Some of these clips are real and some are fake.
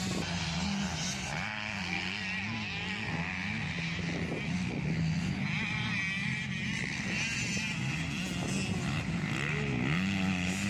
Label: real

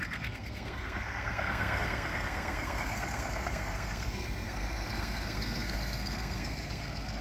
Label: fake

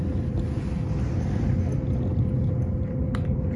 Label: real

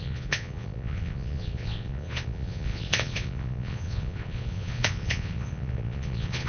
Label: fake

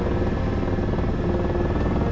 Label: real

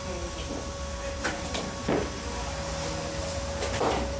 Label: real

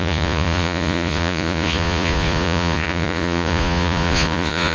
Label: fake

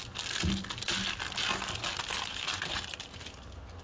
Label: real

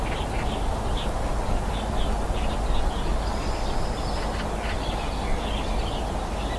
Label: real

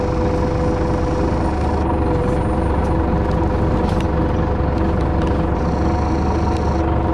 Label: real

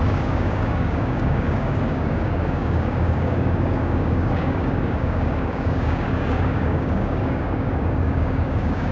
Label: fake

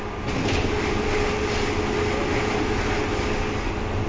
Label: real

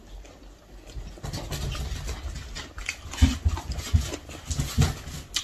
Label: real